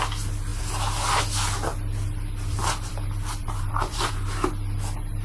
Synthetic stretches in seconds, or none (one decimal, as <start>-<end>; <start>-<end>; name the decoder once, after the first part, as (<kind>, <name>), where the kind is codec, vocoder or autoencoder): 3.4-4.1 (vocoder, BigVGAN v2)